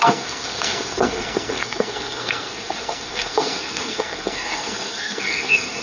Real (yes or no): no